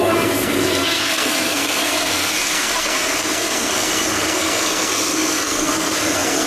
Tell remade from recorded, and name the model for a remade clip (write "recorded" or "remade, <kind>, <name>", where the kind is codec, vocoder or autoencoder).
remade, codec, SNAC